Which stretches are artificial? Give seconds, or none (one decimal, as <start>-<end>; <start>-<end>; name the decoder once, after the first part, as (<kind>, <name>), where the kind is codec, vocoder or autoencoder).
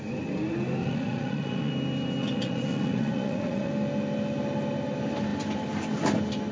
0.8-1.7 (vocoder, Vocos); 2.2-3.7